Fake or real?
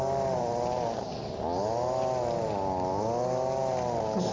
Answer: real